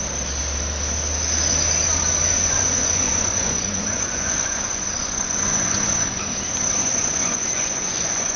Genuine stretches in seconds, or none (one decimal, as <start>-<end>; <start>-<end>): 0.0-2.4; 6.2-6.8